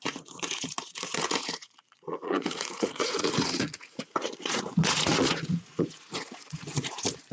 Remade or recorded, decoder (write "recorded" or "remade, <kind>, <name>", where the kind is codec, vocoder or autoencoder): remade, vocoder, Vocos